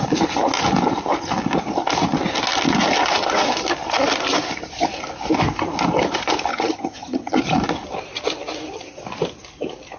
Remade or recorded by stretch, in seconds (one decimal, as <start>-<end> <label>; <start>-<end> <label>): 0.0-6.5 recorded; 6.5-7.4 remade; 7.4-10.0 recorded